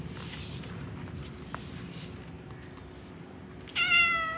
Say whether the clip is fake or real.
real